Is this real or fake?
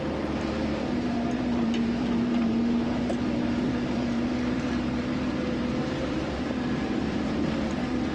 fake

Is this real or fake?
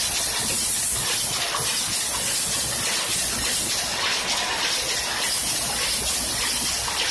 real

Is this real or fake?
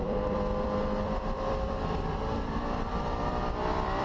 fake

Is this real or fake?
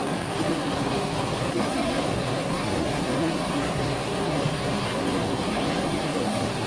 fake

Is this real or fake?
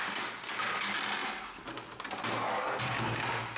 real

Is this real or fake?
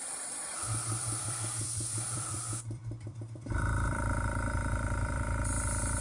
fake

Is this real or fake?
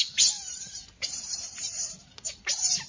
real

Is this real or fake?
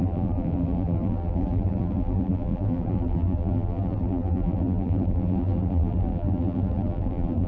fake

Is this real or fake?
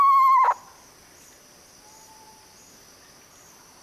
real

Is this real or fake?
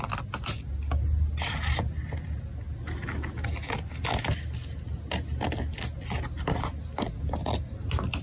real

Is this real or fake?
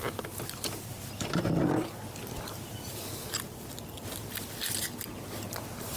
real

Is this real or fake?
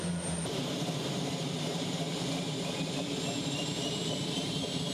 fake